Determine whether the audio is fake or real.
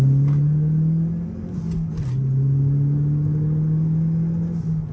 real